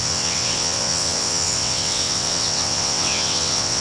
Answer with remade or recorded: remade